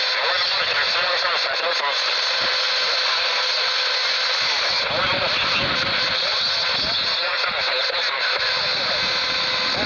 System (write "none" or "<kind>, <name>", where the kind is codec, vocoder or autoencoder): none